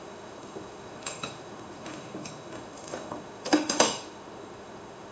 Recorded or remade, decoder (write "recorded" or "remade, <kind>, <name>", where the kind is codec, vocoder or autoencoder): remade, autoencoder, DAC-VAE